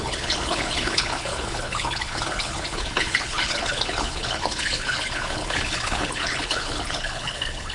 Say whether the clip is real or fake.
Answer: fake